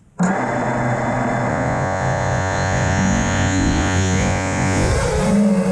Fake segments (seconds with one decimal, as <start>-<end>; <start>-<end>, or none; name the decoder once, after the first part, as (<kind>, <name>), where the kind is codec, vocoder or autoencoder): 1.5-4.9 (vocoder, Vocos)